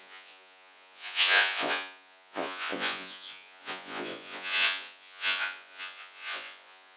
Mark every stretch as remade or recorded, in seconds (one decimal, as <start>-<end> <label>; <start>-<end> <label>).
0.0-7.0 remade